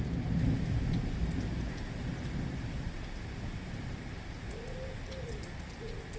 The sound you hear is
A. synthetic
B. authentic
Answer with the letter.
B